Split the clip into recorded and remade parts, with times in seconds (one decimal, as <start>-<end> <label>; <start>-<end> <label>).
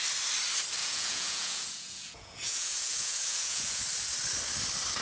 0.0-0.8 recorded; 0.8-3.8 remade; 3.8-5.0 recorded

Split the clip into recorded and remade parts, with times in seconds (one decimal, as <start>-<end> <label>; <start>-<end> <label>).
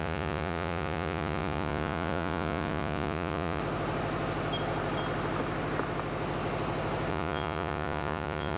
0.0-3.6 remade; 3.6-7.1 recorded; 7.1-8.6 remade